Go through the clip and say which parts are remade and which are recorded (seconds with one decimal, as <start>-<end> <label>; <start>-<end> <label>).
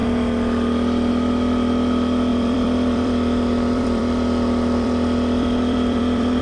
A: 0.0-2.3 recorded; 2.3-6.4 remade